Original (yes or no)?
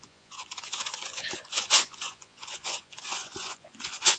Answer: no